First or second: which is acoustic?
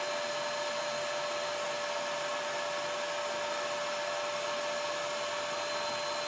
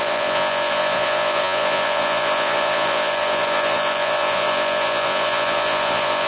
first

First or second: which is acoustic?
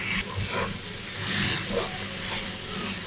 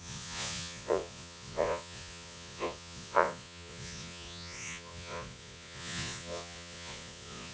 first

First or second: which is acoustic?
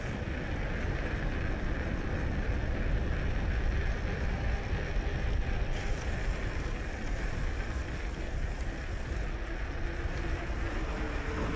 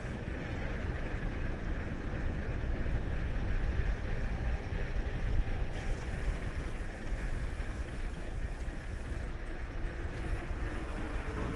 first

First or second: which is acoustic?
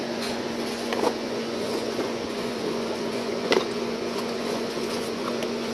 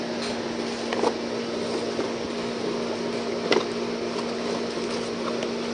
second